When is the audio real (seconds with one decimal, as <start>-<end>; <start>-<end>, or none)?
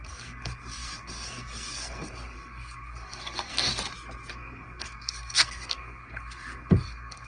3.7-4.3